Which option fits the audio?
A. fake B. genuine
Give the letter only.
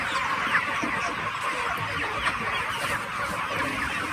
B